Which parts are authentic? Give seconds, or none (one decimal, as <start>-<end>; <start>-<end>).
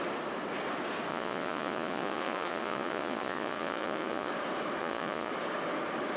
0.0-1.1; 4.3-4.8; 5.3-6.2